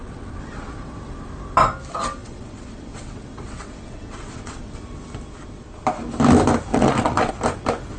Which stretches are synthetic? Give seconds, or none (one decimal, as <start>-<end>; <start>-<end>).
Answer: 0.0-1.3; 2.2-4.8; 6.7-7.3